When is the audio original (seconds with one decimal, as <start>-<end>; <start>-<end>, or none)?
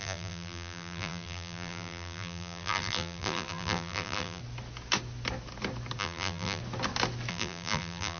4.4-6.0; 6.6-7.3